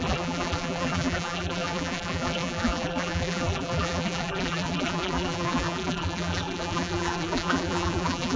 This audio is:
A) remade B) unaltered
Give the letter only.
A